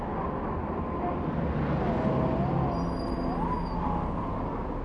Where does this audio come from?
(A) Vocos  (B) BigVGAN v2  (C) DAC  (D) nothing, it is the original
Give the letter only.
D